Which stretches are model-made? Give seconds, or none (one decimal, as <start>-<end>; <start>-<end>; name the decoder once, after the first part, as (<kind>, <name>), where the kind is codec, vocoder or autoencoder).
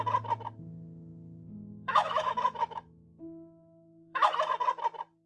1.1-4.3 (autoencoder, DAC-VAE)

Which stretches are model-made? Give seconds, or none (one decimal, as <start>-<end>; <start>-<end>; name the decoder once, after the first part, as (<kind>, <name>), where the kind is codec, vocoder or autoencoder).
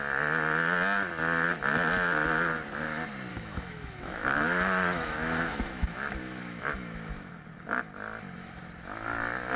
3.3-7.3 (autoencoder, DAC-VAE)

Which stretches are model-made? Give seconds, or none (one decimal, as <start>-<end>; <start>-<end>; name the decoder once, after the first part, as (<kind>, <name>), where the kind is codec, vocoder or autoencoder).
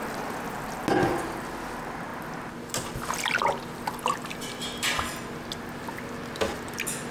none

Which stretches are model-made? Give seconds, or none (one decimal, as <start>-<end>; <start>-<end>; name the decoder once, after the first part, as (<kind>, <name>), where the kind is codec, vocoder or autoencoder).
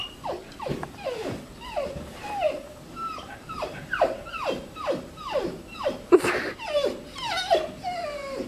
none